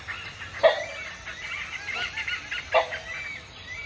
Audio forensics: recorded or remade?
recorded